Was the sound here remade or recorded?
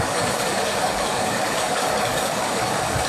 remade